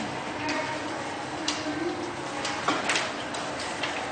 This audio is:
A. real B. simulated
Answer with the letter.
A